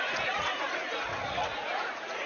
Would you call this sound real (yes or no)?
no